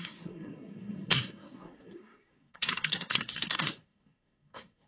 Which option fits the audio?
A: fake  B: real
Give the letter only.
A